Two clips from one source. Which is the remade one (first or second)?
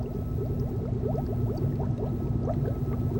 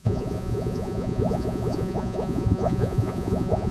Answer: second